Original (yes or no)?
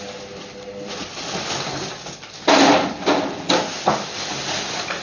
yes